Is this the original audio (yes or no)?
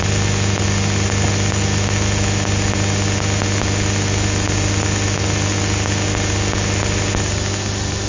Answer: yes